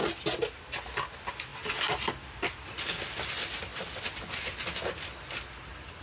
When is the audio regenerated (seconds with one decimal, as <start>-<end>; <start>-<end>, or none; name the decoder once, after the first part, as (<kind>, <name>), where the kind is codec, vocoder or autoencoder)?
none